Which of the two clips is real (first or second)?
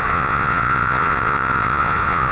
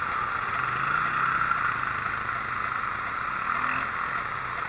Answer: second